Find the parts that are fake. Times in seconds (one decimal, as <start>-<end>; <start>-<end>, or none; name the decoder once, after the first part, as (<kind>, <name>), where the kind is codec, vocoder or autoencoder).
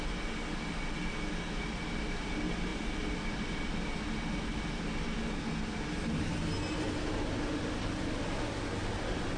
none